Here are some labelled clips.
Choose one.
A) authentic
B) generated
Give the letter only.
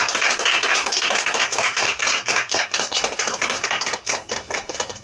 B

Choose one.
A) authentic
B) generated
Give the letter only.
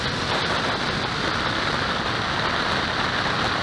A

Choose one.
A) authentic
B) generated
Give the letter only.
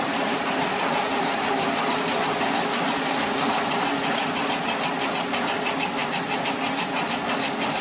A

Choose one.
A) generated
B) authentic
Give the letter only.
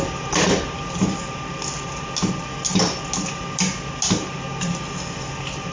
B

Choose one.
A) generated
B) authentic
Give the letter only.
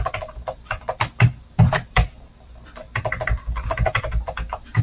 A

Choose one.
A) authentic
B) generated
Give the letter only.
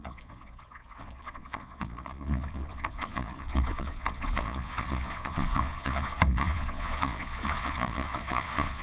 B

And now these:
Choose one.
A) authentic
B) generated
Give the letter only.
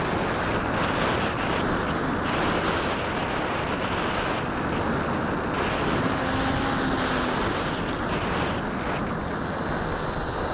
A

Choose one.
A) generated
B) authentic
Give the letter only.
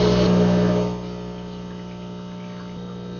B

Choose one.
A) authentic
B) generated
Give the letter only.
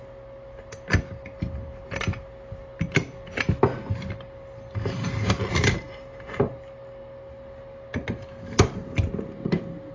A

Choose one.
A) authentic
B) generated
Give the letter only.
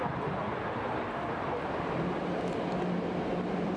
B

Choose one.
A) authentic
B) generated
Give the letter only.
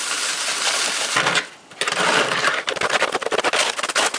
A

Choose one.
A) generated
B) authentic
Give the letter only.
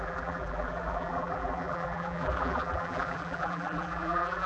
A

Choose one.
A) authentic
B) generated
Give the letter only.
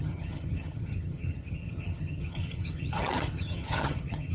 B